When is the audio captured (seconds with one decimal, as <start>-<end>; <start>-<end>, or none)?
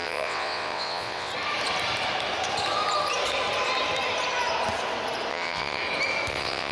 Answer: 1.3-5.3; 5.8-6.3